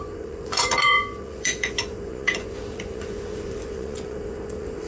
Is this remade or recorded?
remade